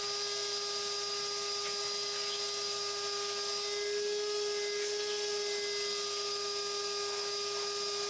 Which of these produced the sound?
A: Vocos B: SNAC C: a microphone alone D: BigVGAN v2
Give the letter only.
C